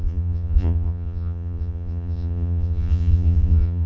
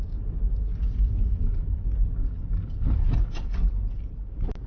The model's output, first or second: first